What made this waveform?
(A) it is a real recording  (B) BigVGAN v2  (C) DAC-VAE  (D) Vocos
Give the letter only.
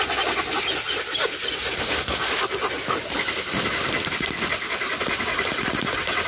A